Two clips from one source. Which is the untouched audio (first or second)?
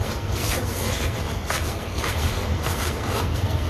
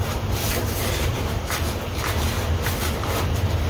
second